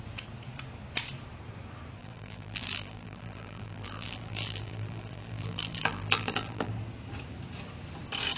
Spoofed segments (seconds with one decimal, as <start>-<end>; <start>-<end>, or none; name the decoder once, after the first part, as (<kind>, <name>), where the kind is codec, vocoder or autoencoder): 2.0-6.7 (vocoder, BigVGAN v2)